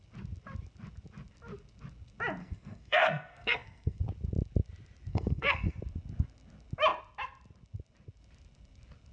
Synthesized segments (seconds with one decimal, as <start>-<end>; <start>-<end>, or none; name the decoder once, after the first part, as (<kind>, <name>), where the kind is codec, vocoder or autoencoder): 2.4-4.0 (codec, SNAC); 5.1-5.8